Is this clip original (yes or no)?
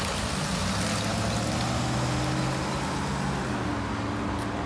yes